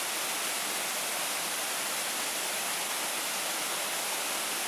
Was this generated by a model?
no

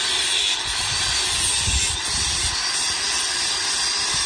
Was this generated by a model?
no